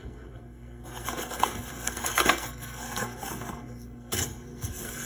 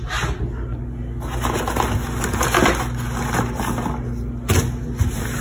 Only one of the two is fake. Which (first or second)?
first